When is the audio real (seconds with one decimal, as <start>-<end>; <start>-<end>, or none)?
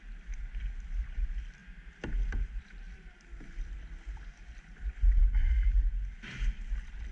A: 0.0-7.1